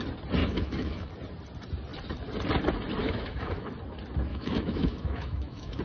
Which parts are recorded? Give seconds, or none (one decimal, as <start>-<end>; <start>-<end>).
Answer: 0.0-0.4; 1.1-3.0; 3.7-4.3